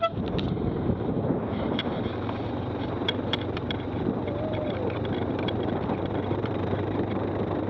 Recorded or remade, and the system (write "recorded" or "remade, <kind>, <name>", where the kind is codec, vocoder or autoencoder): remade, vocoder, BigVGAN v2